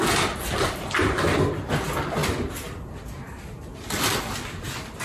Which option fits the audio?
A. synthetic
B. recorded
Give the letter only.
B